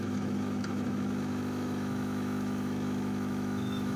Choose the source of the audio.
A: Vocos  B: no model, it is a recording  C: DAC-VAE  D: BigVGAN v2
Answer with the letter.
C